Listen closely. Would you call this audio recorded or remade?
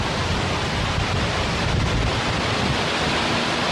recorded